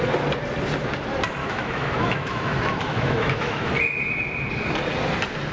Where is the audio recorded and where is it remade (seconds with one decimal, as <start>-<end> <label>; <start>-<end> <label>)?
0.0-1.4 recorded; 1.4-3.7 remade; 3.7-5.5 recorded